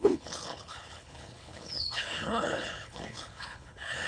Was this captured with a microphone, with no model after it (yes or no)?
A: no